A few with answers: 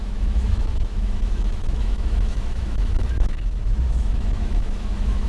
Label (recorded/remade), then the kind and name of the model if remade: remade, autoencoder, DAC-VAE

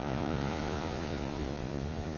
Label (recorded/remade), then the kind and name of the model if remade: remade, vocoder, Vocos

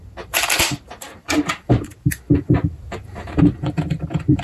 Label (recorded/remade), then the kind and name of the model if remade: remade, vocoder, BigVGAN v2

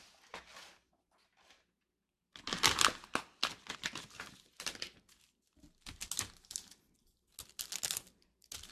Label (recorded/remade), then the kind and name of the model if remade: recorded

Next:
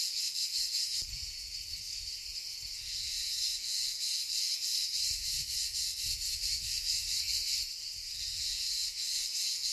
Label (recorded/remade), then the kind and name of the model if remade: remade, codec, SNAC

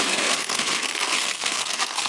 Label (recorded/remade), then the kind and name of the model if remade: remade, codec, SNAC